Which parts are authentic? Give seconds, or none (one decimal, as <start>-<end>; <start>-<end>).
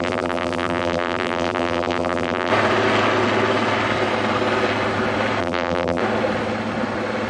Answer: 2.5-5.4; 6.0-7.3